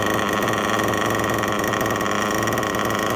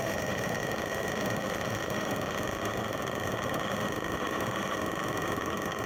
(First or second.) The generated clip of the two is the second